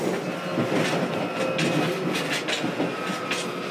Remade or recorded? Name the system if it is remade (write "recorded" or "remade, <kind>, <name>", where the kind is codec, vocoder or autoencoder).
recorded